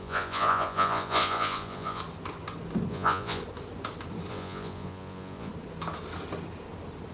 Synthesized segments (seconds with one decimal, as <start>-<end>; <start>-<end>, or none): 0.0-2.0; 2.9-3.4; 4.3-5.5